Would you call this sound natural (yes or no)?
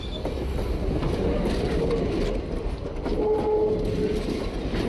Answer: yes